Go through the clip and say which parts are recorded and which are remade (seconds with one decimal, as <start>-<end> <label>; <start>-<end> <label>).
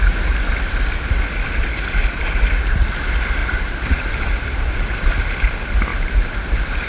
0.0-3.4 recorded; 3.4-5.5 remade; 5.5-5.9 recorded; 5.9-6.9 remade